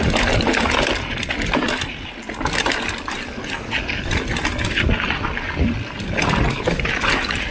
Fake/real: real